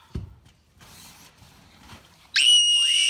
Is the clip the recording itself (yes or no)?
no